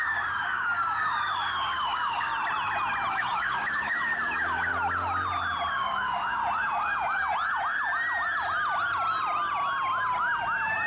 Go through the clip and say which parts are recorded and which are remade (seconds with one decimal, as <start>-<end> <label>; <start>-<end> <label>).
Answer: 0.0-2.3 remade; 2.3-3.1 recorded; 3.1-4.7 remade; 4.7-5.7 recorded; 5.7-6.4 remade; 6.4-10.9 recorded